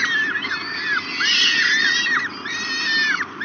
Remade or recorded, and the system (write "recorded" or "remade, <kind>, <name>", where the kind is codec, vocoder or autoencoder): recorded